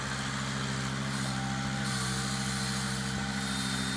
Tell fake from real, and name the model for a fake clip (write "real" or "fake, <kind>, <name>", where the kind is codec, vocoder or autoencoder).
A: real